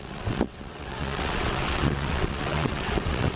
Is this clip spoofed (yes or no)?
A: yes